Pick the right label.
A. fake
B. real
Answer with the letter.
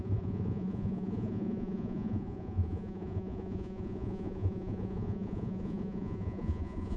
A